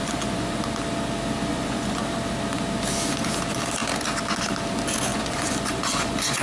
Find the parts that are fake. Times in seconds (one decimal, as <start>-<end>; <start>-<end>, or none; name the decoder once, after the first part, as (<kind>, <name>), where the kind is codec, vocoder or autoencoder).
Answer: 0.0-0.6 (vocoder, Vocos); 1.5-2.0; 5.1-6.4

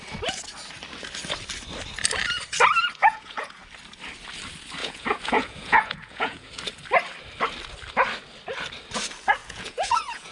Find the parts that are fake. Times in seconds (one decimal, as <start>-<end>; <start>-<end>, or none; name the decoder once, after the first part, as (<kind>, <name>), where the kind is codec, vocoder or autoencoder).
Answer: 3.0-3.6 (vocoder, Vocos); 4.8-6.5; 9.4-10.3

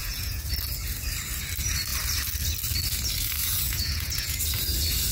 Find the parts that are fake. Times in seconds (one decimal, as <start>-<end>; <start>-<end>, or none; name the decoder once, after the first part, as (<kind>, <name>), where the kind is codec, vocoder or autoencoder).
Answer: 0.0-0.5 (vocoder, Vocos); 3.4-4.4

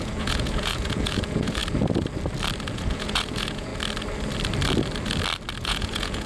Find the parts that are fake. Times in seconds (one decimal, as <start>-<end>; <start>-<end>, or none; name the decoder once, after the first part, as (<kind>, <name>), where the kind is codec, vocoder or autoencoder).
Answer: 0.0-1.6 (vocoder, Vocos); 2.7-3.7; 5.6-6.3